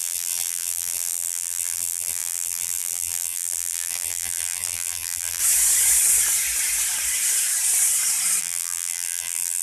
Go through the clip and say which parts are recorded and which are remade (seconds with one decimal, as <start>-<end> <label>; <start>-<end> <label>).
0.0-5.4 remade; 5.4-8.4 recorded; 8.4-9.6 remade